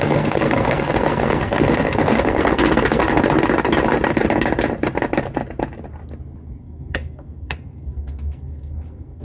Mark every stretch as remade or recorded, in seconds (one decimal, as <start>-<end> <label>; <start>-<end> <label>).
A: 0.0-3.0 remade; 3.0-6.6 recorded; 6.6-9.2 remade